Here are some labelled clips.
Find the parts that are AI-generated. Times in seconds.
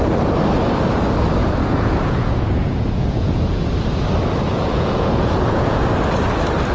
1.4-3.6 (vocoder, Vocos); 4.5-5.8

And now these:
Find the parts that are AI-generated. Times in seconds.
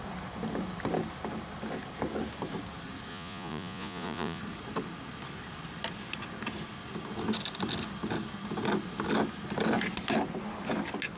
3.1-4.4 (vocoder, Vocos)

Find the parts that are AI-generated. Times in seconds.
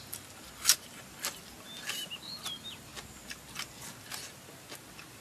none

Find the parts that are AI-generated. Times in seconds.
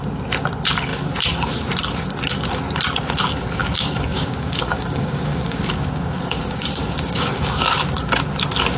3.6-7.6 (codec, DAC)